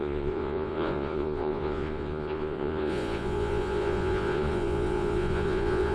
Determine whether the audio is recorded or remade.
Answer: remade